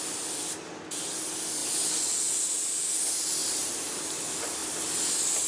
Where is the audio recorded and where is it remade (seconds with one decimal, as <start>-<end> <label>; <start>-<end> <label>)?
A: 0.0-3.4 recorded; 3.4-4.0 remade; 4.0-5.5 recorded